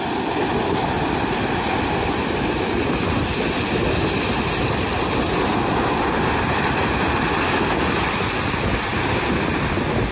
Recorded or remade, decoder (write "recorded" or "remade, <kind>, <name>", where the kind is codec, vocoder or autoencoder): recorded